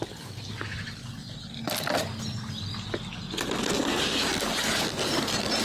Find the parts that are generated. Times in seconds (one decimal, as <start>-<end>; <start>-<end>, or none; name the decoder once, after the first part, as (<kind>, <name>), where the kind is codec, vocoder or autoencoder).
none